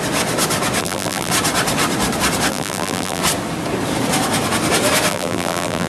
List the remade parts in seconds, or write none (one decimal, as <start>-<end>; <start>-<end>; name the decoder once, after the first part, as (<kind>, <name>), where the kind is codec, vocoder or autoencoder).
0.8-1.3 (vocoder, BigVGAN v2); 2.5-3.2; 5.1-5.9